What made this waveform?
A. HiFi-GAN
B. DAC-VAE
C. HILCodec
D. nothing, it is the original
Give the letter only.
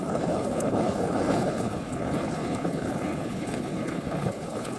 C